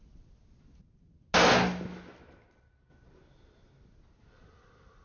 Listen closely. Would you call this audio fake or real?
real